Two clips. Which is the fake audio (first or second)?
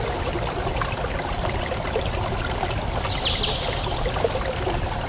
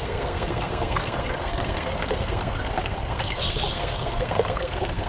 second